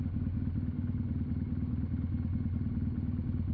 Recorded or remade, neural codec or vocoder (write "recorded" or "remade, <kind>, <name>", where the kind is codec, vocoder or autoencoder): recorded